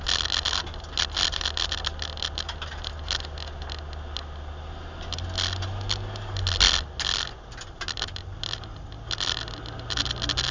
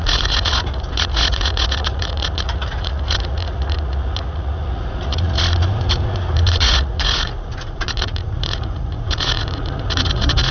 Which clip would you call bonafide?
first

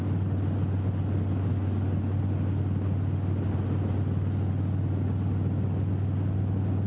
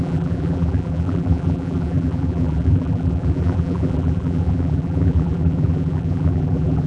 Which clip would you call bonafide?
first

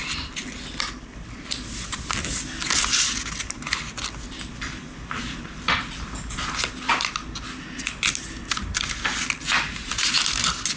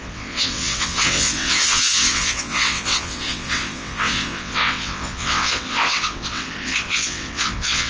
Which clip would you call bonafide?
first